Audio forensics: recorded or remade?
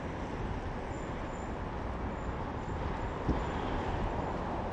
recorded